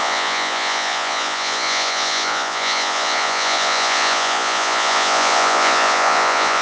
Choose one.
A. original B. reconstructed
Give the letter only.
B